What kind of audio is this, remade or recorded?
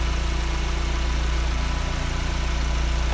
recorded